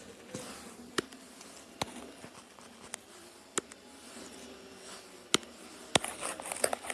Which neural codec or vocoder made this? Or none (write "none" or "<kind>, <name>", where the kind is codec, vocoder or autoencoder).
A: none